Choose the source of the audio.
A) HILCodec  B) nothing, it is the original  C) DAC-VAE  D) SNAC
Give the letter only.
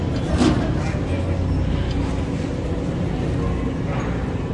B